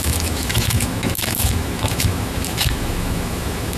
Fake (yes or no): yes